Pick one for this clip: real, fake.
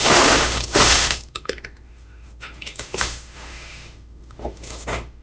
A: fake